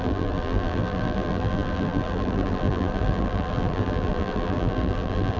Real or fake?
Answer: fake